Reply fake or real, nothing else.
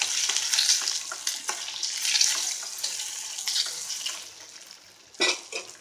real